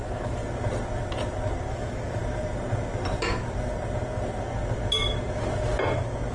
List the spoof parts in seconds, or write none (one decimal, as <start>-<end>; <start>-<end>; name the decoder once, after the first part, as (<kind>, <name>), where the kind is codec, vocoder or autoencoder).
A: 0.0-0.4 (autoencoder, DAC-VAE); 1.7-2.2